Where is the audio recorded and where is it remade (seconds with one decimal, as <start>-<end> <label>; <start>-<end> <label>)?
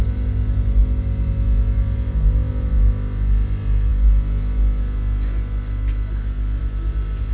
0.0-7.3 recorded